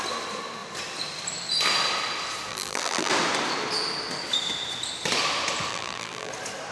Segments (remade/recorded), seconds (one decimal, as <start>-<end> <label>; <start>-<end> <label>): 0.0-2.5 recorded; 2.5-3.1 remade; 3.1-5.7 recorded; 5.7-6.3 remade; 6.3-6.7 recorded